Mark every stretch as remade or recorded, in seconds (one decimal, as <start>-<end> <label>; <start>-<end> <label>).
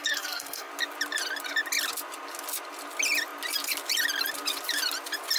0.0-0.7 remade; 0.7-5.4 recorded